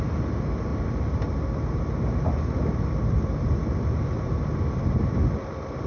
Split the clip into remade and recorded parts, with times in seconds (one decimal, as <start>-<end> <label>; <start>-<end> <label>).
0.0-0.7 recorded; 0.7-1.2 remade; 1.2-5.9 recorded